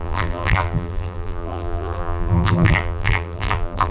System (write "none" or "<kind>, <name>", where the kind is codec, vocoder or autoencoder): vocoder, BigVGAN v2